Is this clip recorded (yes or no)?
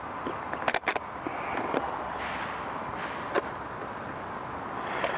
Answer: yes